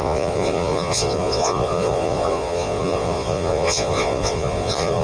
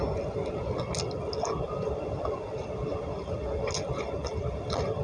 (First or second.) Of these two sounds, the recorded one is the second